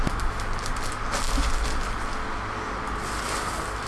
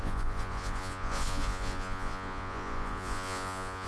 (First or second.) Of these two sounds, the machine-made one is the second